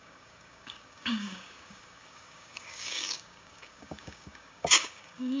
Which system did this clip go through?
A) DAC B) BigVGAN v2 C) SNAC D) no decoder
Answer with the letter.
A